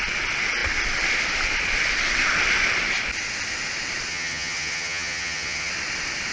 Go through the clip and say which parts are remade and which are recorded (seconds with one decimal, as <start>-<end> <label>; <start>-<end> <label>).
0.0-4.1 recorded; 4.1-5.7 remade; 5.7-6.3 recorded